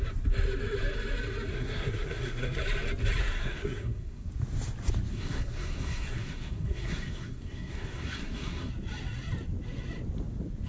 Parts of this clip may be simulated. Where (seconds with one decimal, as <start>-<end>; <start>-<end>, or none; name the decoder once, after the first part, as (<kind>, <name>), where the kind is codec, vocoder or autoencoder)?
1.5-2.6 (codec, SNAC); 3.2-4.3; 5.1-8.7